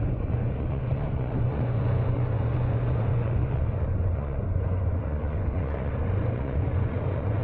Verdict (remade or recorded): remade